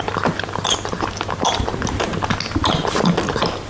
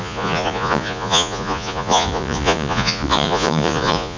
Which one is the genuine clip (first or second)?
first